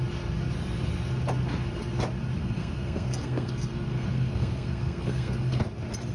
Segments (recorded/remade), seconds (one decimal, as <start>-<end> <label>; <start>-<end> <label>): 0.0-2.4 recorded; 2.4-5.6 remade; 5.6-6.1 recorded